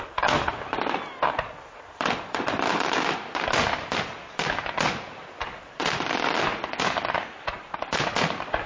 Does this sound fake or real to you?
real